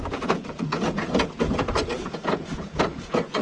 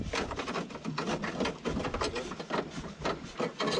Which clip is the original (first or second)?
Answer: second